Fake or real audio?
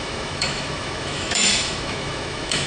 fake